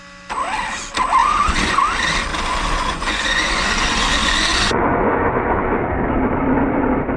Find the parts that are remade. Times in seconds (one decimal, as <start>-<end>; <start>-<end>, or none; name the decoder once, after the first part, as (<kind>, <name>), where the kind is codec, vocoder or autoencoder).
1.2-1.8 (vocoder, Vocos); 2.3-5.8

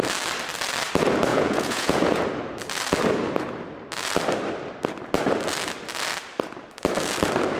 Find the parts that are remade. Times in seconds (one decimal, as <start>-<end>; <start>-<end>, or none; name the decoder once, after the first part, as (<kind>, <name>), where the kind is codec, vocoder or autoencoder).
1.3-2.2 (vocoder, Vocos)